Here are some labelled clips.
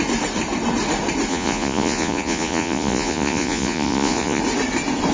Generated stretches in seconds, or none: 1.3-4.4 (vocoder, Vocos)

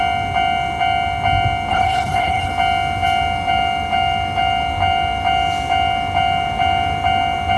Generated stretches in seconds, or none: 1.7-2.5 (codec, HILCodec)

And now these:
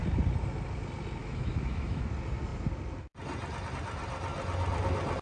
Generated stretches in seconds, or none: 1.2-2.1 (autoencoder, DAC-VAE)